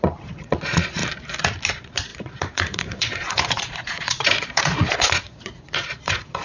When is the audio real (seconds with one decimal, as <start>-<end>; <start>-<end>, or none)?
1.0-1.7